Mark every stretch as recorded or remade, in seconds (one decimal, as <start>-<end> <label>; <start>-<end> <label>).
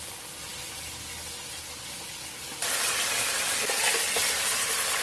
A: 0.0-5.0 recorded